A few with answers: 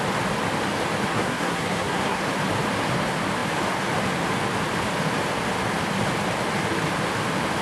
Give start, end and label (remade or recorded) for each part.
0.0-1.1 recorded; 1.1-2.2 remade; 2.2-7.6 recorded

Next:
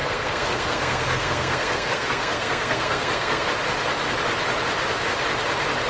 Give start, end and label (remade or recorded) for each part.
0.0-3.5 remade; 3.5-5.9 recorded

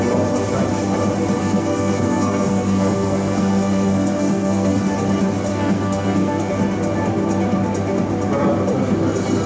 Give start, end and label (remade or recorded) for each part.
0.0-1.4 recorded; 1.4-4.8 remade; 4.8-5.5 recorded; 5.5-6.5 remade; 6.5-9.5 recorded

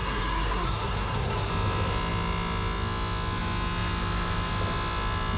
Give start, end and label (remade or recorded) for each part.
0.0-1.5 remade; 1.5-5.4 recorded

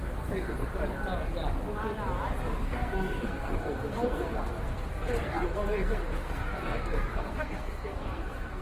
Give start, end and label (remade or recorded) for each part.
0.0-0.8 remade; 0.8-2.6 recorded; 2.6-8.6 remade